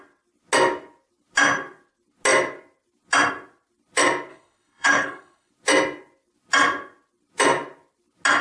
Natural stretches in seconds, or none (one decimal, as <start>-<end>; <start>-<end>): 0.0-4.3; 5.5-8.4